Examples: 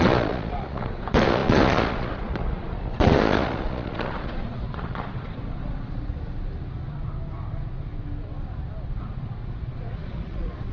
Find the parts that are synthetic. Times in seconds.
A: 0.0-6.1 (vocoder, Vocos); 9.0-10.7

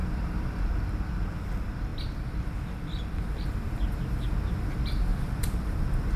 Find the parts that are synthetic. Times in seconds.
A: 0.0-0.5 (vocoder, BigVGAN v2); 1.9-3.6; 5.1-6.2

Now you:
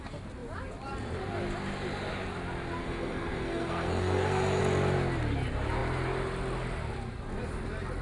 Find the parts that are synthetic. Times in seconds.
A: 2.8-4.6 (codec, SNAC)